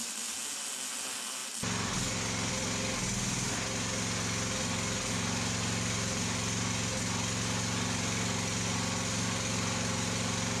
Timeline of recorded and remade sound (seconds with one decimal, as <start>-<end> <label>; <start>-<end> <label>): 0.0-10.6 recorded